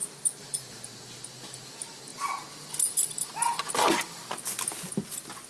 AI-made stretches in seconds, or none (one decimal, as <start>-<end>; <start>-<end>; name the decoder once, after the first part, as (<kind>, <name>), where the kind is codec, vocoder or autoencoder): 0.0-2.1 (vocoder, BigVGAN v2); 2.9-4.2